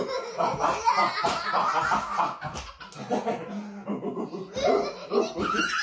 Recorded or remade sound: recorded